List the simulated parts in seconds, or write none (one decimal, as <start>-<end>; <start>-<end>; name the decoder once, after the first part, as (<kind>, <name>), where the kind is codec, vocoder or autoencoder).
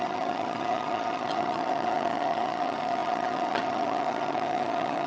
0.0-5.1 (vocoder, HiFi-GAN)